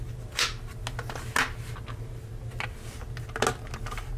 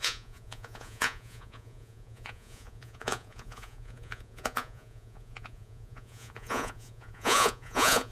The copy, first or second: second